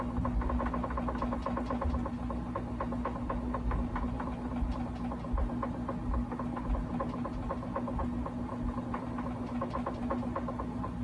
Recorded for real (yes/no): yes